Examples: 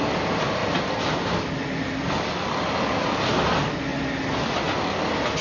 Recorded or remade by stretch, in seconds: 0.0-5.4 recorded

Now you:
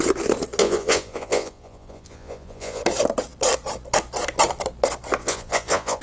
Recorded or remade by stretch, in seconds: 0.0-0.6 recorded; 0.6-2.8 remade; 2.8-5.2 recorded; 5.2-6.0 remade

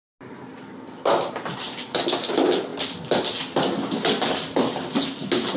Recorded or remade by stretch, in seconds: 0.0-5.6 recorded

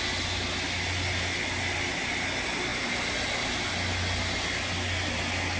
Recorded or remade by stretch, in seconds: 0.0-5.6 recorded

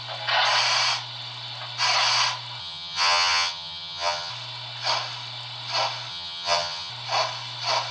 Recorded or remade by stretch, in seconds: 0.0-2.6 recorded; 2.6-4.3 remade; 4.3-6.1 recorded; 6.1-6.9 remade; 6.9-7.9 recorded

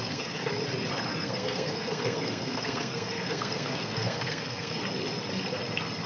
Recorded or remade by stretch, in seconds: 0.0-0.5 remade; 0.5-1.1 recorded; 1.1-4.8 remade; 4.8-6.1 recorded